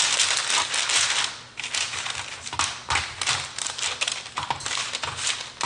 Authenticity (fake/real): real